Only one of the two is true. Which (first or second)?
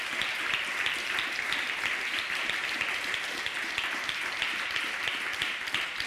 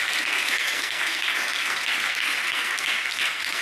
first